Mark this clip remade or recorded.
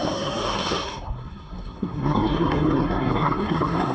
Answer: remade